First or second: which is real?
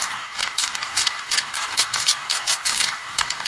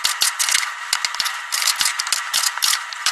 second